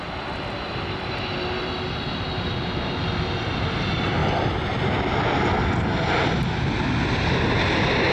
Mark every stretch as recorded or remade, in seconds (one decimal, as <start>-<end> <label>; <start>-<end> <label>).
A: 0.0-8.1 recorded